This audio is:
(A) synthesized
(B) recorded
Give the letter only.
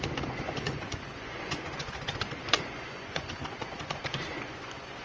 A